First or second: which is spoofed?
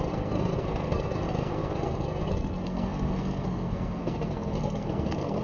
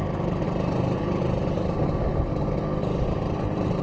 first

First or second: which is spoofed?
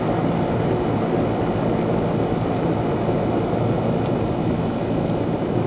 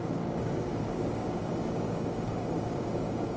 second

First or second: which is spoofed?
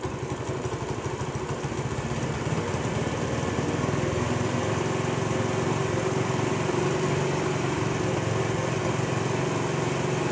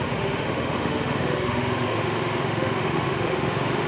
second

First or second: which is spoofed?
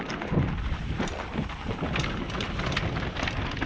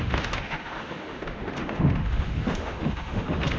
second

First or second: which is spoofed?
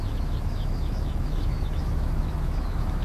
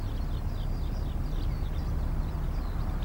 first